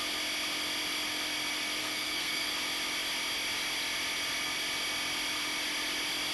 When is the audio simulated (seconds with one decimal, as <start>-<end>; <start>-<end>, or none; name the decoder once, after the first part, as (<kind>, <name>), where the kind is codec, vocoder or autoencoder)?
1.8-2.5 (codec, SNAC)